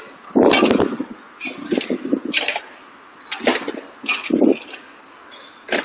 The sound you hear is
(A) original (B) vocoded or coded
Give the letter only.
A